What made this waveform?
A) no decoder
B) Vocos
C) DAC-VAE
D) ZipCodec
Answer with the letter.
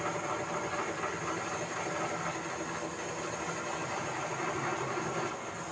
A